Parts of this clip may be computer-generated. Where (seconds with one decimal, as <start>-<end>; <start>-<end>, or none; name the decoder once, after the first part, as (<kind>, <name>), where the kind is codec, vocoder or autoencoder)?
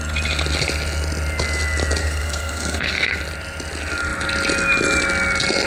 2.0-3.2 (codec, SNAC)